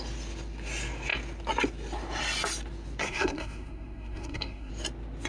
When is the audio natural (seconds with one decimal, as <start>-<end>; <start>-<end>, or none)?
0.0-3.0; 4.7-5.3

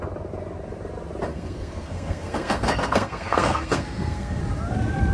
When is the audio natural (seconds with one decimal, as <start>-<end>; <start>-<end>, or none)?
0.0-1.3; 4.4-5.1

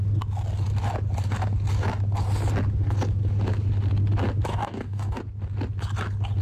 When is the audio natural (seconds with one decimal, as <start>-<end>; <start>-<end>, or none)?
0.0-4.5; 5.2-6.4

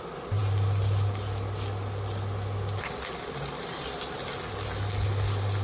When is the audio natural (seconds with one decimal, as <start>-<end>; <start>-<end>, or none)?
0.0-5.6